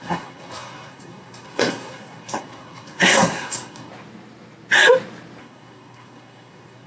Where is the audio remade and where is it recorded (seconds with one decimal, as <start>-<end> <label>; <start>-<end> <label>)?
0.0-3.9 remade; 3.9-5.4 recorded; 5.4-6.9 remade